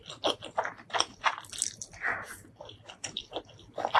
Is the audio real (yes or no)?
yes